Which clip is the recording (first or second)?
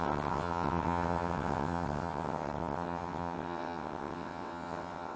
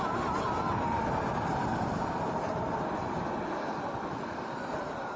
second